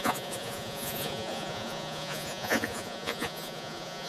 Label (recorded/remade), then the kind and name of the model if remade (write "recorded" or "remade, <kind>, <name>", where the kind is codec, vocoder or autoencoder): remade, vocoder, Vocos